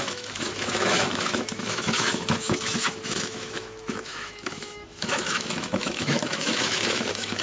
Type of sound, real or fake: fake